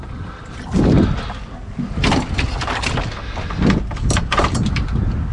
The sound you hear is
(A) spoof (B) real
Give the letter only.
B